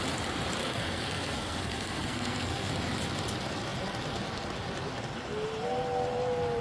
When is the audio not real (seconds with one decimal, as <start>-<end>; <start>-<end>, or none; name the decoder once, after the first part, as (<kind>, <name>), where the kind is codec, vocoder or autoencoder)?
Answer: 0.6-2.7 (codec, SNAC)